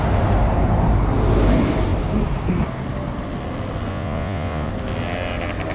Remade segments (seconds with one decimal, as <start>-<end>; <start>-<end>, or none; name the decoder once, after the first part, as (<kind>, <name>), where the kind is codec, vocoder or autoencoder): 3.9-4.7 (vocoder, Vocos)